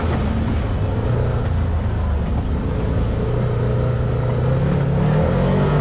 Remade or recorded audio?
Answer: recorded